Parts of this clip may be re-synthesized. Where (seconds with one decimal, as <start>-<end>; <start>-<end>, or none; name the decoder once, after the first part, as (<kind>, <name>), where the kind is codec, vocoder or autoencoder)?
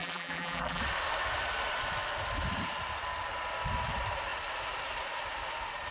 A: 0.0-0.8 (vocoder, BigVGAN v2)